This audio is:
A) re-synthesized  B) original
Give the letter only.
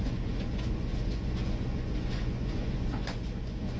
A